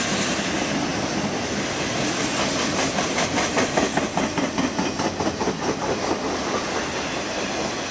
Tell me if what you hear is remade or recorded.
recorded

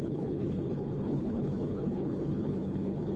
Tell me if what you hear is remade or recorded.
remade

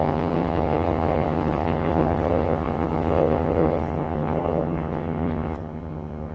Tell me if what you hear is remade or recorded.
remade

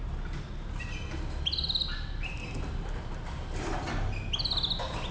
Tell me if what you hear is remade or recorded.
recorded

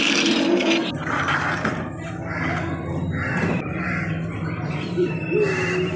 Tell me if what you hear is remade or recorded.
recorded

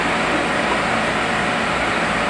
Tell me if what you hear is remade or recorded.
recorded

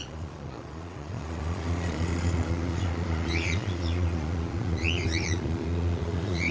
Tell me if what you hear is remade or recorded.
remade